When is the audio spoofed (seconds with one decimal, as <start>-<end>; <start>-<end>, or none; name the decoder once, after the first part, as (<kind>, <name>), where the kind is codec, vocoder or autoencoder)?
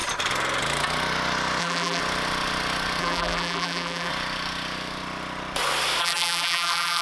1.6-2.0 (vocoder, BigVGAN v2); 3.0-4.1; 6.0-7.0